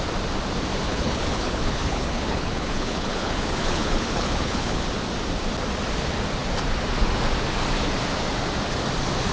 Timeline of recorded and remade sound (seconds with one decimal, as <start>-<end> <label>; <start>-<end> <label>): 0.0-0.9 recorded; 0.9-4.8 remade; 4.8-9.3 recorded